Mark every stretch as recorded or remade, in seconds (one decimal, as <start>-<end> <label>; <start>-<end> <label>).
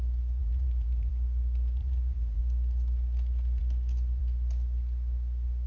0.0-0.4 recorded; 0.4-1.1 remade; 1.1-1.8 recorded; 1.8-2.4 remade; 2.4-5.7 recorded